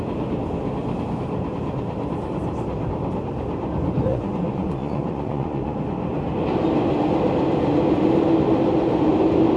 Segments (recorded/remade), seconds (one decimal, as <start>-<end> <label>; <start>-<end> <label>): 0.0-4.1 recorded; 4.1-5.8 remade; 5.8-9.6 recorded